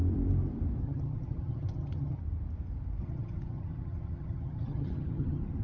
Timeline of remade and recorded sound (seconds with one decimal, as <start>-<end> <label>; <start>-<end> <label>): 0.0-0.8 recorded; 0.8-2.2 remade; 2.2-3.0 recorded; 3.0-5.6 remade